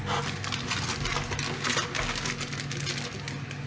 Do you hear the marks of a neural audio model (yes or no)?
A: no